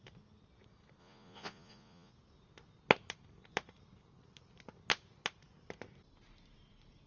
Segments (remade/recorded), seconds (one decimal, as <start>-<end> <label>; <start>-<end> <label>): 0.0-1.0 recorded; 1.0-2.1 remade; 2.1-7.1 recorded